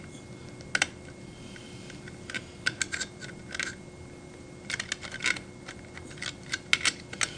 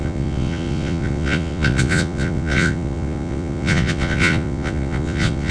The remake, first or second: second